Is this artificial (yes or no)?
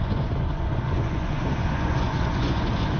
yes